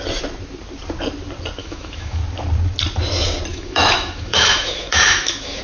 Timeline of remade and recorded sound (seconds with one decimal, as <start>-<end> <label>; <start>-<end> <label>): 0.0-1.6 recorded; 1.6-2.2 remade; 2.2-3.5 recorded; 3.5-5.6 remade